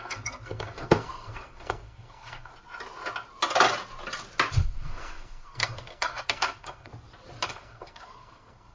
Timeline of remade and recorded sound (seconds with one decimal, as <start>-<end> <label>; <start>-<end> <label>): 0.0-2.5 remade; 2.5-4.5 recorded; 4.5-6.9 remade; 6.9-7.5 recorded; 7.5-8.7 remade